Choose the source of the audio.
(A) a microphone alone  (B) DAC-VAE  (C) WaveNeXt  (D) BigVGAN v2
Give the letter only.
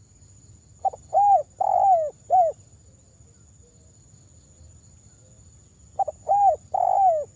A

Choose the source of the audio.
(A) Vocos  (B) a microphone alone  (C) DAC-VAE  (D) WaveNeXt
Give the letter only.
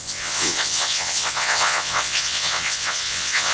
D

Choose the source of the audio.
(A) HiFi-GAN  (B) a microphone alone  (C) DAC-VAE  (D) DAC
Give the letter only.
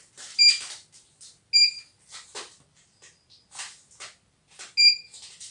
B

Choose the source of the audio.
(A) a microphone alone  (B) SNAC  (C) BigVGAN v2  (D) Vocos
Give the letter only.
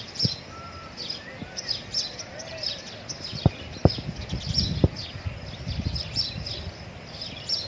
A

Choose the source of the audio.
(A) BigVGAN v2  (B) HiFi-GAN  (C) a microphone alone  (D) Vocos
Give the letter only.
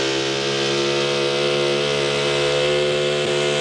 C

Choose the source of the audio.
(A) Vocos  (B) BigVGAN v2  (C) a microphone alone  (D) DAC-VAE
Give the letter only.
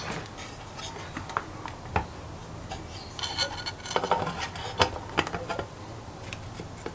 C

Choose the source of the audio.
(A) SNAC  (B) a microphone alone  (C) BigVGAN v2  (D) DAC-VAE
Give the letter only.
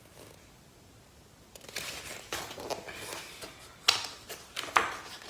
B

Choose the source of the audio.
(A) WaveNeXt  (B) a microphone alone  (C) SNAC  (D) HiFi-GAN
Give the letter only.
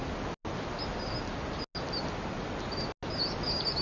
B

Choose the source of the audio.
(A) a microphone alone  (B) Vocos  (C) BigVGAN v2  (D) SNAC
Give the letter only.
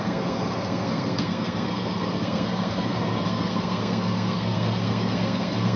D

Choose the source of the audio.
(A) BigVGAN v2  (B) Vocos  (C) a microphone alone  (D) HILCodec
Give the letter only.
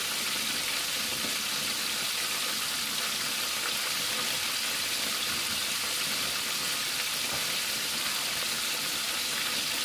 C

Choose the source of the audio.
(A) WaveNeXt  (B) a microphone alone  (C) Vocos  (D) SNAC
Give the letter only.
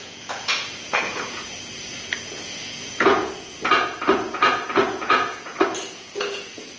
C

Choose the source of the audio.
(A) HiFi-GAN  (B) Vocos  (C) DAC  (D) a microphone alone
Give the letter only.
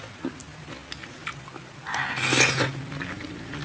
D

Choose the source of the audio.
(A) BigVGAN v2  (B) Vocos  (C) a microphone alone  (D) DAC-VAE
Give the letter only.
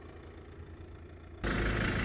C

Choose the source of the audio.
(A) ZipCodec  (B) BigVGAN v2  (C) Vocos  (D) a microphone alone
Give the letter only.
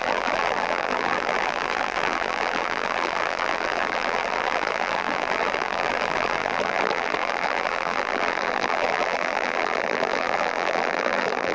B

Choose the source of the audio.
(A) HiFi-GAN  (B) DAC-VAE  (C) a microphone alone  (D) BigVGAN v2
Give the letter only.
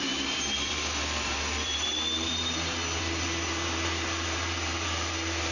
D